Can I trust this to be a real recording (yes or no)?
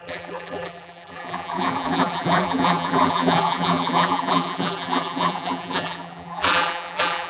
no